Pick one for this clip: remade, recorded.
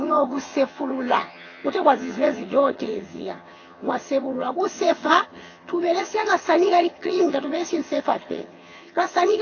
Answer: remade